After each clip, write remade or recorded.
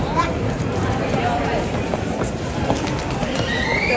remade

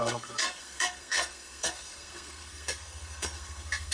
remade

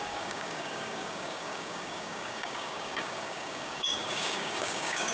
remade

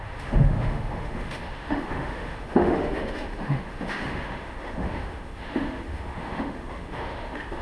remade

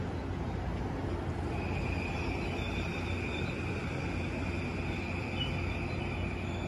recorded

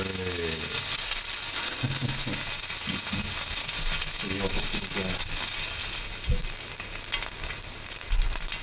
recorded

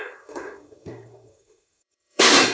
remade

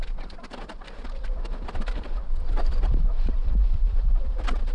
remade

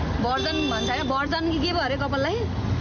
recorded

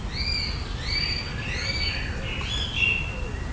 recorded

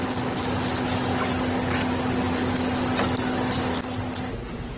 recorded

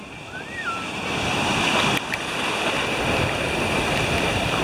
recorded